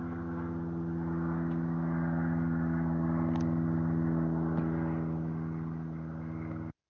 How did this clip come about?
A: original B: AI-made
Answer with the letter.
A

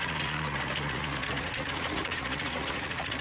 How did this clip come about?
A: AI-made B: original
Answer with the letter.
A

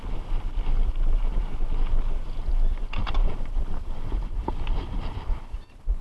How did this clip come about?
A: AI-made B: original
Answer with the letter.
B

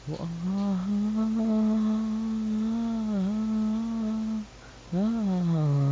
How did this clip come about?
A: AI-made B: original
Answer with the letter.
B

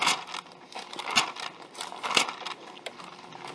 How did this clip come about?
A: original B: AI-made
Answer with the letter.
A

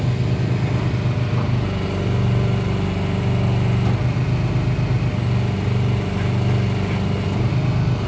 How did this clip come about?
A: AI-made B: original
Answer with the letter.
B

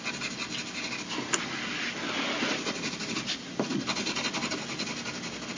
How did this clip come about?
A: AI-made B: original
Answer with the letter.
B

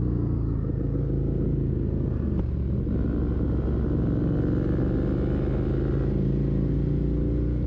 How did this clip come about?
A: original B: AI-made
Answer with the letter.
A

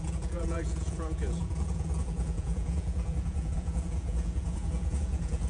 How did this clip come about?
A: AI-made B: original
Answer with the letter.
A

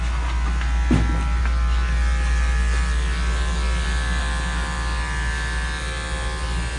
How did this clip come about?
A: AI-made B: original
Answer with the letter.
B